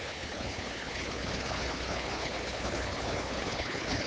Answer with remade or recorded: remade